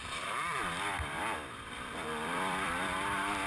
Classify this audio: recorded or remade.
remade